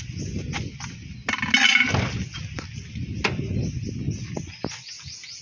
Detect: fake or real real